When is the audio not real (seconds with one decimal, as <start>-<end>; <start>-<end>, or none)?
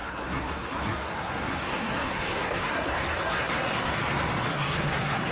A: 0.0-3.9; 4.5-5.3